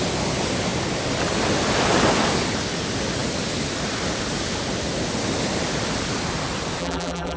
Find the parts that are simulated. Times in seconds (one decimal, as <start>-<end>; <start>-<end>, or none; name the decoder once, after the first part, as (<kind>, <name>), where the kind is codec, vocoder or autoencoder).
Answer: 6.8-7.4 (vocoder, BigVGAN v2)